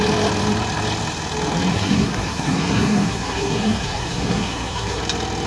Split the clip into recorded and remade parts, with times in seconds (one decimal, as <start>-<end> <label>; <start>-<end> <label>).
0.0-1.7 recorded; 1.7-5.0 remade; 5.0-5.5 recorded